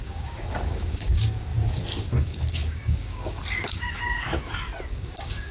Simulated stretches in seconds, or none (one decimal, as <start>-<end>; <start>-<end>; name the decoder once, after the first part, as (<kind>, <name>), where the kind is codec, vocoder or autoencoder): 0.0-1.5 (codec, DAC); 2.2-4.3; 4.9-5.5